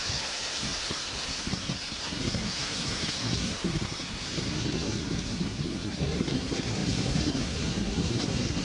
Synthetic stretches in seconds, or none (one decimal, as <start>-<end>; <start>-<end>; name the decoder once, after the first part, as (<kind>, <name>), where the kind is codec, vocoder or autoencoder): 0.0-8.6 (codec, SNAC)